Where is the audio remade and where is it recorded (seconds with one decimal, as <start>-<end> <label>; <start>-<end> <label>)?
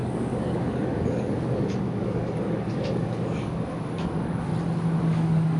0.0-4.5 remade; 4.5-5.0 recorded; 5.0-5.6 remade